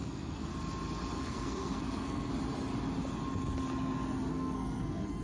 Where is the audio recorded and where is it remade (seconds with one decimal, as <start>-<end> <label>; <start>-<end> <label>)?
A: 0.0-0.5 remade; 0.5-1.1 recorded; 1.1-2.3 remade; 2.3-4.3 recorded; 4.3-5.2 remade